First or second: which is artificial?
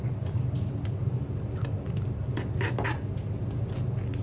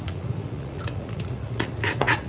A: second